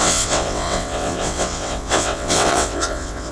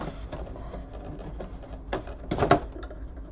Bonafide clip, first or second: second